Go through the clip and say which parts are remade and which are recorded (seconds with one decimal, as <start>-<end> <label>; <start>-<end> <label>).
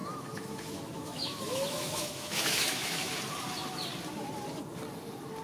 0.0-3.1 remade; 3.1-5.4 recorded